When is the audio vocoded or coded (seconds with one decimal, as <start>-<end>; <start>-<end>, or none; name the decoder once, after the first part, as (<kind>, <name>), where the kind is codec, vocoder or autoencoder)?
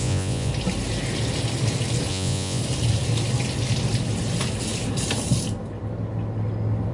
0.0-0.5 (vocoder, Vocos); 2.1-2.6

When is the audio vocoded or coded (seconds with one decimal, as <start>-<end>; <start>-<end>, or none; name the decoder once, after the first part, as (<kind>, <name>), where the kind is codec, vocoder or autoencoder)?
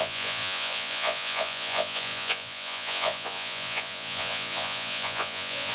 0.0-5.7 (vocoder, Vocos)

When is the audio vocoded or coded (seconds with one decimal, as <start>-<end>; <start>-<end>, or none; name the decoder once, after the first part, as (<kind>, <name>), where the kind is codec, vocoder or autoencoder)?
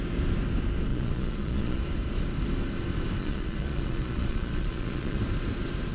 0.9-1.8 (vocoder, Vocos); 3.2-5.2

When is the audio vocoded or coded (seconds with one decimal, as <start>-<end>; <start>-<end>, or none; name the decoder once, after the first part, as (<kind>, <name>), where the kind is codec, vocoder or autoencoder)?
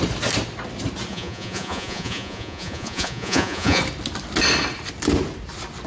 1.1-3.8 (vocoder, Vocos)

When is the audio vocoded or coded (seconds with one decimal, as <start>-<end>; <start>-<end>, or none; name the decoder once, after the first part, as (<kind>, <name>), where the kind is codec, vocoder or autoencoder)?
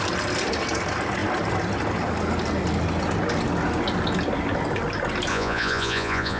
5.3-6.4 (vocoder, Vocos)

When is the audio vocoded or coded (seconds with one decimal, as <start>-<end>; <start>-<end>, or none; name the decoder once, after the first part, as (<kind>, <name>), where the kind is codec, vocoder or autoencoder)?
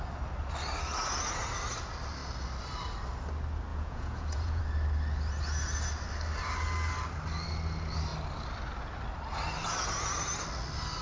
3.7-4.6 (vocoder, Vocos)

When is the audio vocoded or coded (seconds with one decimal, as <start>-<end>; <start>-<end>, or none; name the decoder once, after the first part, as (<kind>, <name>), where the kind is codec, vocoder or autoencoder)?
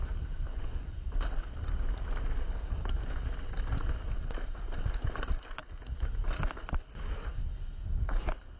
0.5-1.0 (vocoder, Vocos)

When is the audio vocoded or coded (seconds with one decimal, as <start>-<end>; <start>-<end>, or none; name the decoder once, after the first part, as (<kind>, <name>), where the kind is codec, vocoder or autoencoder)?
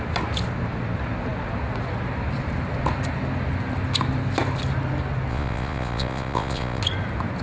5.3-6.8 (vocoder, Vocos)